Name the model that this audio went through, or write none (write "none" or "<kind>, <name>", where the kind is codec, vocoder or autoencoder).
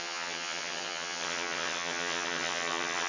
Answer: vocoder, HiFi-GAN